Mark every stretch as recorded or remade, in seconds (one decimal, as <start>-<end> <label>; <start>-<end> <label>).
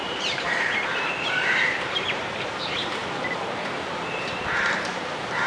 0.0-3.0 remade; 3.0-4.3 recorded; 4.3-5.5 remade